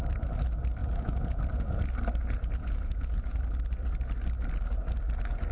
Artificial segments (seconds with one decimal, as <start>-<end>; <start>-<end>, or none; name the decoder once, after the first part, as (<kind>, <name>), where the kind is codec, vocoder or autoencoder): 0.8-1.8 (vocoder, Vocos); 2.2-3.4